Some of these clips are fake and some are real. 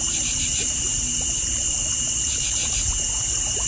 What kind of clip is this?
fake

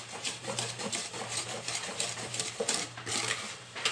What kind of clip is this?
fake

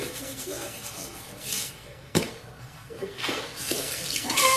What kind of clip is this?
fake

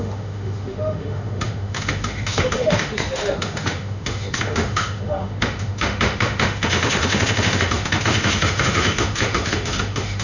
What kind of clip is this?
fake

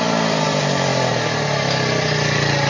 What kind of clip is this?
real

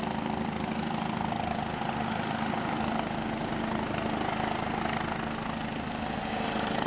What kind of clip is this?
real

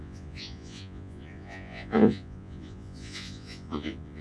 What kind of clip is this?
fake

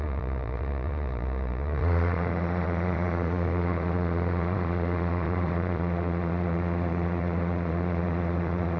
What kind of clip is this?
fake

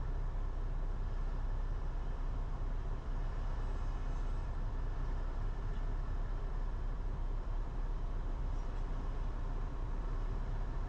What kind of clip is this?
fake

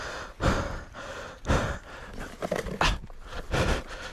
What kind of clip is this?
real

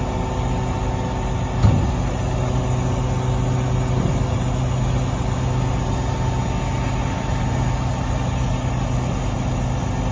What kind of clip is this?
real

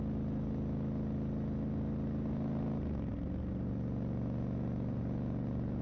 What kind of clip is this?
real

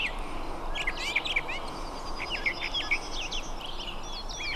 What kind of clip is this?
real